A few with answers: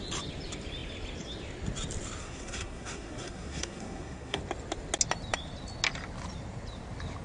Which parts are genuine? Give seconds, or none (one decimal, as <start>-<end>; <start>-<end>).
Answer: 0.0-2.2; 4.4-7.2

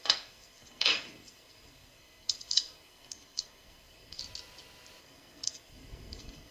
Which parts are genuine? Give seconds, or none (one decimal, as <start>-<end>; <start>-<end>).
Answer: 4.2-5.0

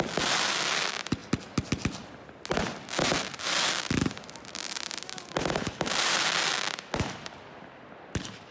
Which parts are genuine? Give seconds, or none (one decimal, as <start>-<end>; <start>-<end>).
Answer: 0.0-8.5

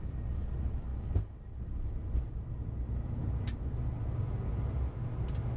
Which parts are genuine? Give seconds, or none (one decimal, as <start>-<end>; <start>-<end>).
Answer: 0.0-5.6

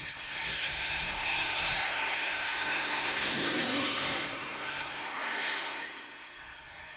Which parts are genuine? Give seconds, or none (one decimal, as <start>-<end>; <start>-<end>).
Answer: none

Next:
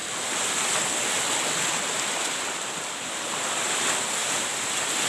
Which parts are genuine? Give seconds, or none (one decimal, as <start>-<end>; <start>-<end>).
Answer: 0.0-5.1

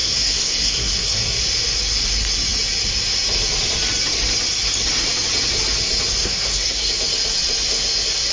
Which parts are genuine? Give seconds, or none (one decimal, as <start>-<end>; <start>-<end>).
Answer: 1.4-6.2; 6.9-8.3